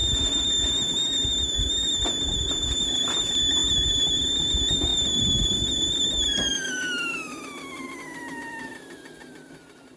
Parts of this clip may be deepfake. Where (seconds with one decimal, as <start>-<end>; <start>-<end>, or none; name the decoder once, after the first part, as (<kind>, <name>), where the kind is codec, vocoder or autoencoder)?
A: 3.6-4.5 (vocoder, BigVGAN v2); 4.9-8.0